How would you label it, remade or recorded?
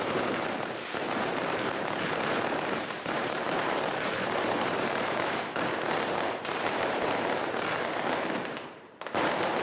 remade